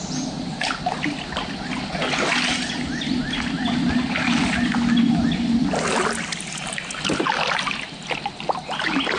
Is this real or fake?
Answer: real